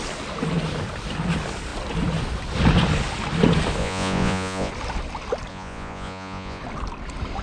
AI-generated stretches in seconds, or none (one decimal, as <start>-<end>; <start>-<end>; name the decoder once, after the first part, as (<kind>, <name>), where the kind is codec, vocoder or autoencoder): 3.8-4.7 (vocoder, Vocos); 5.5-6.6